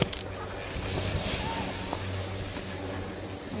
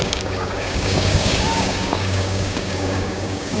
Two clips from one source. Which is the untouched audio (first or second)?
first